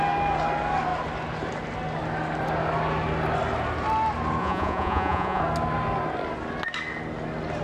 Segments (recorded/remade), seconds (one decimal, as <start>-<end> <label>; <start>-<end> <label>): 0.0-4.4 recorded; 4.4-5.4 remade; 5.4-7.6 recorded